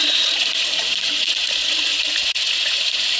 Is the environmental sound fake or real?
fake